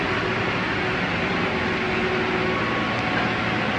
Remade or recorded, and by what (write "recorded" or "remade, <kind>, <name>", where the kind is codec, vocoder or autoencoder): recorded